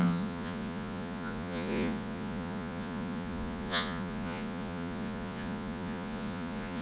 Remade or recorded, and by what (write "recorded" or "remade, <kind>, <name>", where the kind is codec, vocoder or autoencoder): remade, vocoder, Vocos